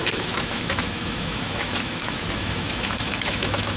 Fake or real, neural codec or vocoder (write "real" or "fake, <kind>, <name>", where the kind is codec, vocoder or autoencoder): fake, autoencoder, DAC-VAE